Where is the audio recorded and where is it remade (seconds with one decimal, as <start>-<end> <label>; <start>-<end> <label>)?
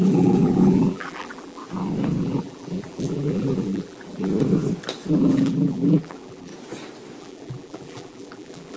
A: 0.0-1.6 remade; 1.6-2.2 recorded; 2.2-4.3 remade; 4.3-5.1 recorded; 5.1-6.5 remade; 6.5-7.2 recorded; 7.2-8.8 remade